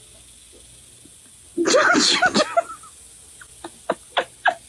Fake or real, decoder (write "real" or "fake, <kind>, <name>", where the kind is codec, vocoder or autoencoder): real